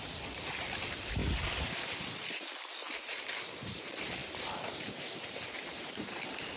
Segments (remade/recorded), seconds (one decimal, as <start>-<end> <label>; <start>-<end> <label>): 0.0-1.2 remade; 1.2-3.0 recorded; 3.0-6.6 remade